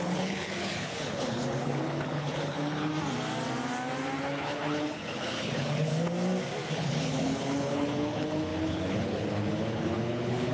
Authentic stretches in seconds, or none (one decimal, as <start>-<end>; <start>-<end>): 2.9-4.2; 5.9-6.7